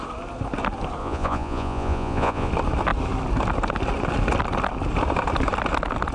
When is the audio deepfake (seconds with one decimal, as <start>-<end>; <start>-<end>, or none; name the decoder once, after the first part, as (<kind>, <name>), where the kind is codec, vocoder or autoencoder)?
1.0-2.5 (vocoder, Vocos)